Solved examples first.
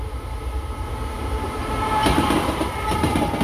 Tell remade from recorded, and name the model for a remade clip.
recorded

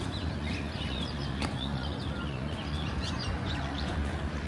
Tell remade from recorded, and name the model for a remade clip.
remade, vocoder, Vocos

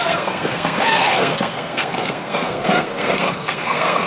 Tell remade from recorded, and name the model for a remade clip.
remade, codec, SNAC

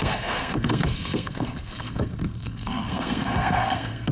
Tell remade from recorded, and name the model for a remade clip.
remade, codec, SNAC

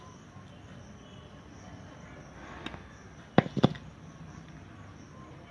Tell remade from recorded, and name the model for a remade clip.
recorded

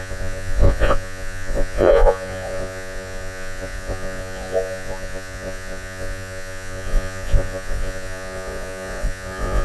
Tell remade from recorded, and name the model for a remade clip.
remade, vocoder, Vocos